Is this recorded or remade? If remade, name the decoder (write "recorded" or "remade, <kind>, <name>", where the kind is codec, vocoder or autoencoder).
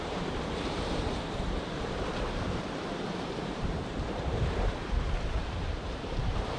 remade, vocoder, BigVGAN v2